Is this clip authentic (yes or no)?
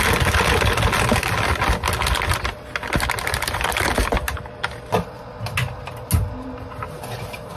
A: yes